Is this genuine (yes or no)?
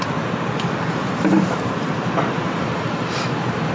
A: yes